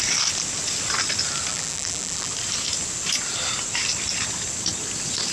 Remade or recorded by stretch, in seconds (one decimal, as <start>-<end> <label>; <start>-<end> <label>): 0.0-1.5 recorded; 1.5-2.3 remade; 2.3-5.3 recorded